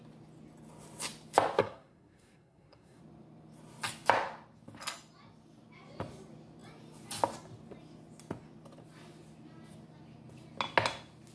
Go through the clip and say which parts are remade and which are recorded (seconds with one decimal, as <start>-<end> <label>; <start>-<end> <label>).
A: 0.0-1.6 recorded; 1.6-3.0 remade; 3.0-11.3 recorded